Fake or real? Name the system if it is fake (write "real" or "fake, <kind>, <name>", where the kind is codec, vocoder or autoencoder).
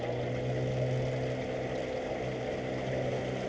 real